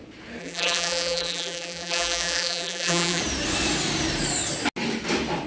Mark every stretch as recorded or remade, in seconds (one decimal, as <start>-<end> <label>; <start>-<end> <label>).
0.0-0.4 recorded; 0.4-3.2 remade; 3.2-5.5 recorded